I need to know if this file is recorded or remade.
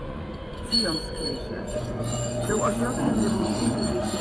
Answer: remade